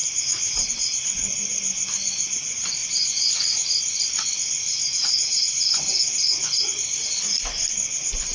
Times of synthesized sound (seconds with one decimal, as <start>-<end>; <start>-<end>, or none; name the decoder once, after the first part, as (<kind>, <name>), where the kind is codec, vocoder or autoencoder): 2.8-3.3 (vocoder, Vocos)